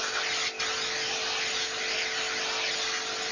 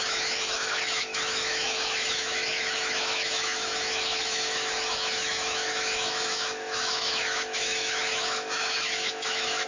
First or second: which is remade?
second